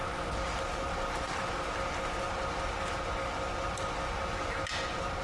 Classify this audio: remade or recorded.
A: recorded